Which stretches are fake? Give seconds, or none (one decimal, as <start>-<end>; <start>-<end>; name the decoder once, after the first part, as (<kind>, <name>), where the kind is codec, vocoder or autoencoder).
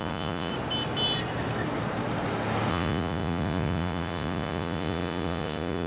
0.0-0.5 (vocoder, Vocos); 2.7-5.9